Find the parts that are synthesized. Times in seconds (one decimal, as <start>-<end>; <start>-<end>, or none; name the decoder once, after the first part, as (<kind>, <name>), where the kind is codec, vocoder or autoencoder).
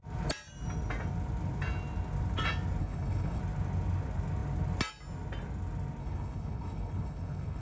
2.8-3.4 (codec, HILCodec); 6.0-7.6